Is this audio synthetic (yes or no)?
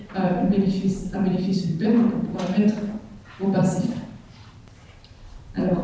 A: yes